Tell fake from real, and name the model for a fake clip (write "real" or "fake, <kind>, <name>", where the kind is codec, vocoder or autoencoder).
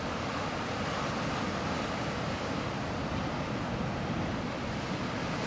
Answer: real